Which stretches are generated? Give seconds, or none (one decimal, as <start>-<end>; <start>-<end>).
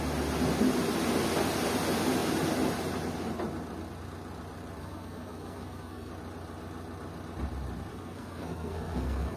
4.8-6.1; 7.9-9.4